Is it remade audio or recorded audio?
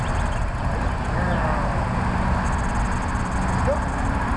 recorded